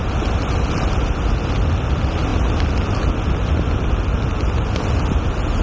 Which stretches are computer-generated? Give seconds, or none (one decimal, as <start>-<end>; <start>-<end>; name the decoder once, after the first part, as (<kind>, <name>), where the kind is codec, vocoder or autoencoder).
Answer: none